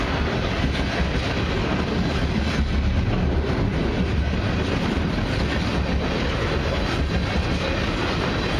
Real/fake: real